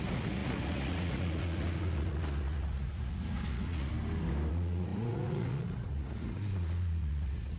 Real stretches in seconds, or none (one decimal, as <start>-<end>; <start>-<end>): 3.9-4.5